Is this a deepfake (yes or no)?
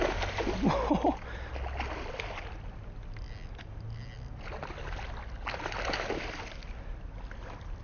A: no